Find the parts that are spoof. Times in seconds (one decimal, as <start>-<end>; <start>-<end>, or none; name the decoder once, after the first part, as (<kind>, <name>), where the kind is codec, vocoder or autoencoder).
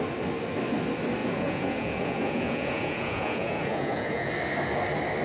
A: 1.2-4.3 (vocoder, Vocos)